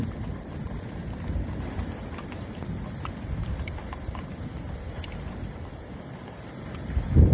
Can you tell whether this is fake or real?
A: fake